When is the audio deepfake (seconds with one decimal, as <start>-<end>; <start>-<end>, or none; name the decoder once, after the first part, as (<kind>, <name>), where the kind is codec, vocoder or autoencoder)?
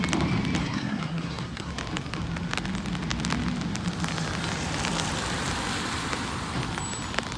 0.6-1.7 (codec, SNAC)